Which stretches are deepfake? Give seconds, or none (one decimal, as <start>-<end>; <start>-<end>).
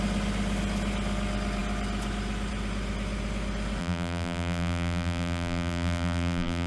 3.8-6.7